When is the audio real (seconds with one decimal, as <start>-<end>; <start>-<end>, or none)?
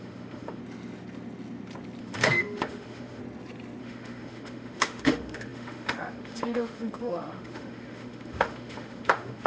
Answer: 0.6-2.0; 3.2-3.8